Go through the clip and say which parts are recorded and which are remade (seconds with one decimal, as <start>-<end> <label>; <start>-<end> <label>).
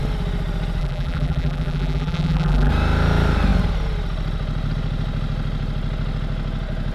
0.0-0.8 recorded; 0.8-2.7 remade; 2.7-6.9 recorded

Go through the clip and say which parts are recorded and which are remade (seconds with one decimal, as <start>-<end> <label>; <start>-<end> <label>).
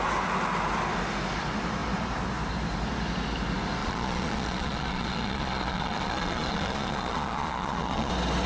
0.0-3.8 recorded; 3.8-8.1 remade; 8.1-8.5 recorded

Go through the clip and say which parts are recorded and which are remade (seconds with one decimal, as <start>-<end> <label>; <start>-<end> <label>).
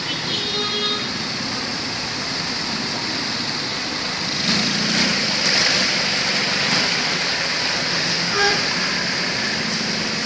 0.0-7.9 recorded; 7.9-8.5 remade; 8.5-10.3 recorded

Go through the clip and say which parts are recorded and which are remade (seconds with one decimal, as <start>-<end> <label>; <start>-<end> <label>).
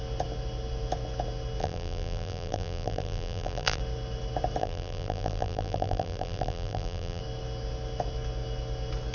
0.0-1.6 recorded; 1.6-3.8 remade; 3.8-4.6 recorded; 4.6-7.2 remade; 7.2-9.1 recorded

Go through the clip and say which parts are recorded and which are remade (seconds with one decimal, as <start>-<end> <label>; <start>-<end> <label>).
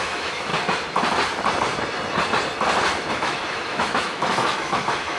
0.0-0.5 remade; 0.5-3.1 recorded; 3.1-5.2 remade